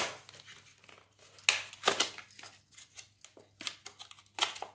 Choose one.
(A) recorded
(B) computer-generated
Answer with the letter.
A